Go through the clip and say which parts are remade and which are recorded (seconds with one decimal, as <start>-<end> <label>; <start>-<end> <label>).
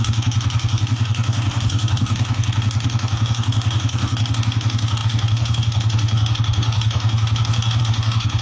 0.0-8.4 remade